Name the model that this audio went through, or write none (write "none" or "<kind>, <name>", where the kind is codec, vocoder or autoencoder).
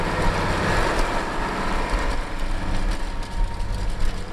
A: none